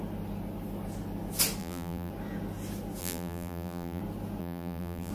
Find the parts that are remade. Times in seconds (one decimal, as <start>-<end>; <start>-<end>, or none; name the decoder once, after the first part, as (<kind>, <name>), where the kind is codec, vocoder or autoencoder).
1.6-2.1 (vocoder, BigVGAN v2); 3.0-4.0; 4.4-5.1